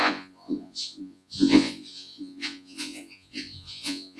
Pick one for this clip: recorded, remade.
remade